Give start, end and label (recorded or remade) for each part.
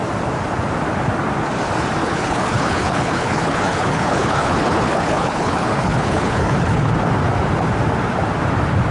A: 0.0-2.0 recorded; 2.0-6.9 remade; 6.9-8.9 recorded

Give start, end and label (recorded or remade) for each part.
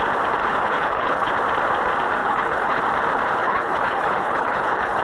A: 0.0-0.4 recorded; 0.4-1.3 remade; 1.3-2.2 recorded; 2.2-2.8 remade; 2.8-3.4 recorded; 3.4-5.0 remade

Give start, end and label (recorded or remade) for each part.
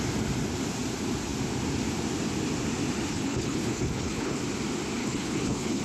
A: 0.0-3.1 recorded; 3.1-4.4 remade; 4.4-5.0 recorded; 5.0-5.8 remade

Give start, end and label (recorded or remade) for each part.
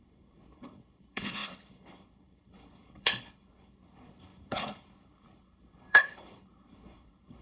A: 0.0-7.4 remade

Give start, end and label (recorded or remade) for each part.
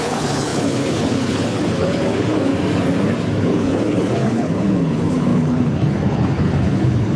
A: 0.0-2.5 remade; 2.5-3.4 recorded; 3.4-7.2 remade